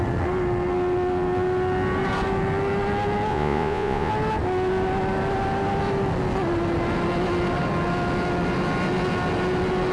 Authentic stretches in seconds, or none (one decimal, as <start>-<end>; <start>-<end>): 0.0-3.3; 4.1-9.9